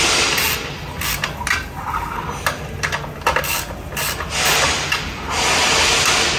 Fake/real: real